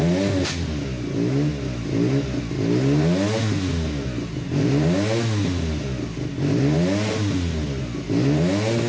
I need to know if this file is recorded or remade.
recorded